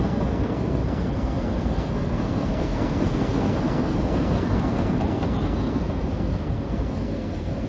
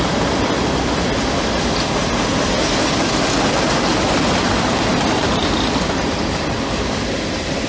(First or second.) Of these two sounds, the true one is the second